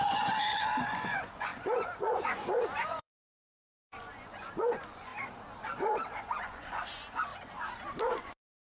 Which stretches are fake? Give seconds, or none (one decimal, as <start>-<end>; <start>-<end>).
0.0-5.1; 6.2-7.3; 8.2-8.8